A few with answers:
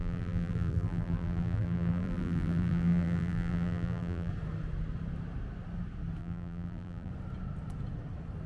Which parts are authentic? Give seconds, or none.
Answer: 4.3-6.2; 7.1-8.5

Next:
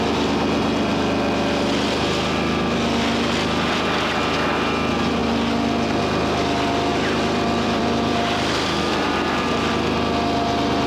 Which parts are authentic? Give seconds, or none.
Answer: 0.0-6.9; 9.7-10.9

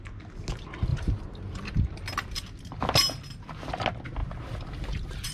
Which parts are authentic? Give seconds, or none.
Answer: 0.0-0.9; 1.8-4.2